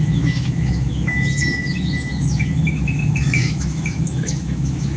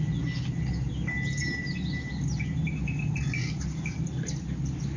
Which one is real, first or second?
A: second